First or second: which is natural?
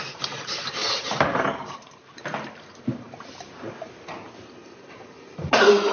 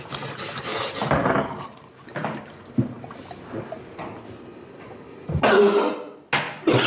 second